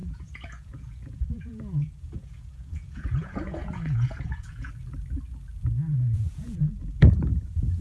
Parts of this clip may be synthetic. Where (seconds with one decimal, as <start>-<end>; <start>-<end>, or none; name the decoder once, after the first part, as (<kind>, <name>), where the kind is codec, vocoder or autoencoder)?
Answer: 0.0-4.7 (vocoder, Vocos); 5.9-6.7